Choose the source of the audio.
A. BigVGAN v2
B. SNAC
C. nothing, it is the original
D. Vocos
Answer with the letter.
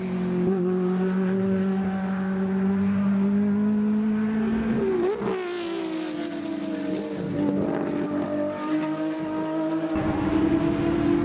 C